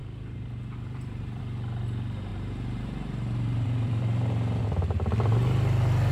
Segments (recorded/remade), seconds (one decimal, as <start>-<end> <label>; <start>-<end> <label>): 0.0-1.4 remade; 1.4-2.3 recorded; 2.3-4.6 remade; 4.6-6.1 recorded